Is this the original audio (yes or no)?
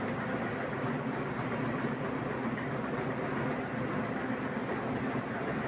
yes